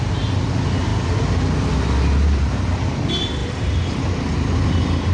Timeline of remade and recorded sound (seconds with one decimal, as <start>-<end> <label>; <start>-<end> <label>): 0.0-3.4 recorded; 3.4-5.1 remade